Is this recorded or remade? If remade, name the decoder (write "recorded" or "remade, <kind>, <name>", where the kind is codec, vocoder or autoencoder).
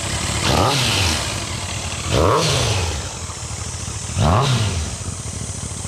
recorded